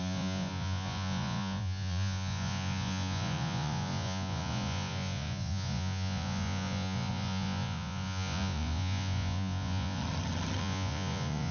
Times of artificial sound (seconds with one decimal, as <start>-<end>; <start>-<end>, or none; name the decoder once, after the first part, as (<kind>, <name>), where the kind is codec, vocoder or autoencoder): 0.0-10.0 (vocoder, Vocos); 10.6-11.5

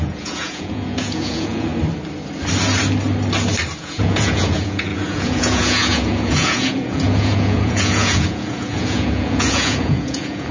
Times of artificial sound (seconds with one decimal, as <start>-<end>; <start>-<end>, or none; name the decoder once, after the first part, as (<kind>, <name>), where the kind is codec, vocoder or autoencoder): 0.0-1.7 (vocoder, Vocos); 3.8-10.5

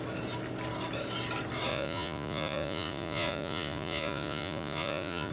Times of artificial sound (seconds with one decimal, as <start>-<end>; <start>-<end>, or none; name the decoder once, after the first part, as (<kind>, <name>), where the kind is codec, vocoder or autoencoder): 1.7-5.3 (vocoder, Vocos)

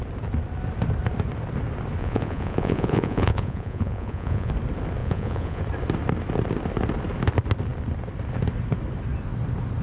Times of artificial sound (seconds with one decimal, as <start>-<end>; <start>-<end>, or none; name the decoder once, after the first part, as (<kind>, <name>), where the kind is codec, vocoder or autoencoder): 2.0-4.5 (vocoder, Vocos); 5.0-5.6

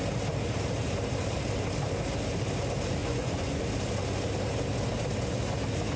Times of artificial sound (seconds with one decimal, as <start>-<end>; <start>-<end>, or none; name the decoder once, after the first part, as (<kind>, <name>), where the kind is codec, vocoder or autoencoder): 3.0-3.6 (vocoder, Vocos)

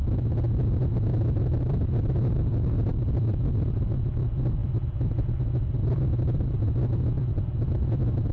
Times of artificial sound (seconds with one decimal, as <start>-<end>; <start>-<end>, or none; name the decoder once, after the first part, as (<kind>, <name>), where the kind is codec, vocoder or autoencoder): none